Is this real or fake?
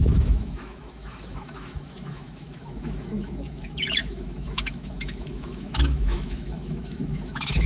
fake